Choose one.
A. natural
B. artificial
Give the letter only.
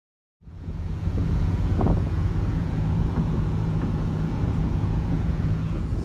B